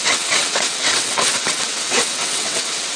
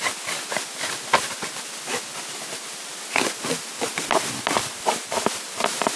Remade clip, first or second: first